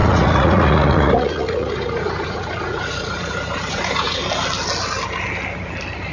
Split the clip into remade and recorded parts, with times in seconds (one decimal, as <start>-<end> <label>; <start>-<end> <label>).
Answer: 0.0-4.2 remade; 4.2-6.1 recorded